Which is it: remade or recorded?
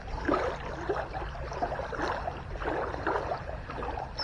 recorded